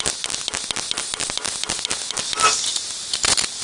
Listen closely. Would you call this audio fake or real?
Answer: real